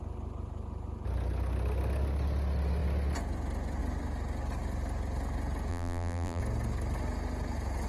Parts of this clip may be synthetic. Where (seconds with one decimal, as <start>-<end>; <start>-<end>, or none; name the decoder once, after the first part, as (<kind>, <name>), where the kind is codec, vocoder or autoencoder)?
5.7-6.4 (vocoder, BigVGAN v2)